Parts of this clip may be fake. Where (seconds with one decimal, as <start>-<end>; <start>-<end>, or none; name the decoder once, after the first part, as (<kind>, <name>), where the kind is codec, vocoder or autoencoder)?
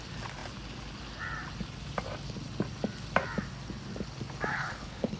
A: 4.5-5.2 (codec, HILCodec)